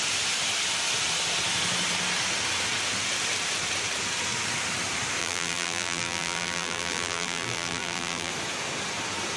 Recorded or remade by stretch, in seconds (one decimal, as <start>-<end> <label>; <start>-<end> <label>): 0.0-5.2 recorded; 5.2-8.3 remade; 8.3-9.4 recorded